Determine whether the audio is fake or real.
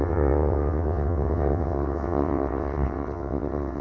fake